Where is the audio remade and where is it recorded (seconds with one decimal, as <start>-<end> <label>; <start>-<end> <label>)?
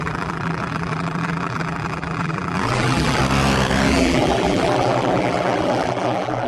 0.0-3.2 remade; 3.2-3.9 recorded; 3.9-6.5 remade